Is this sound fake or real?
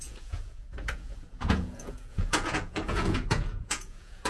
fake